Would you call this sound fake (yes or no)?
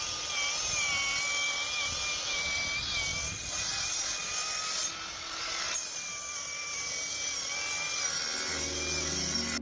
no